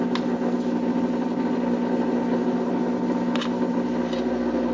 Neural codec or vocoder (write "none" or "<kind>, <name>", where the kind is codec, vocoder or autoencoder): none